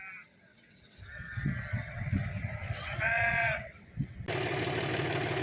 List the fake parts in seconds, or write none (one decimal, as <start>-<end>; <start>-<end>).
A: 0.5-2.2; 2.6-4.2